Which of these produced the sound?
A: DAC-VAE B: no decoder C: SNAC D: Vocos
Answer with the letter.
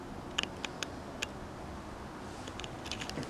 B